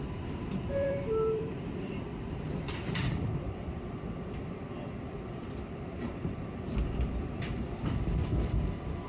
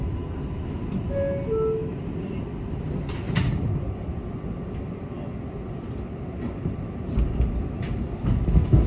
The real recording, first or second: second